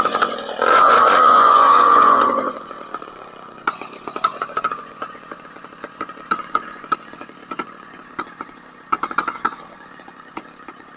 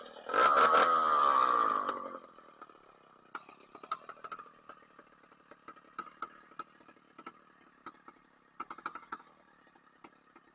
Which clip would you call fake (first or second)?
first